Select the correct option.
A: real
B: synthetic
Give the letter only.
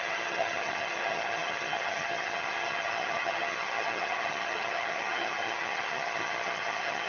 B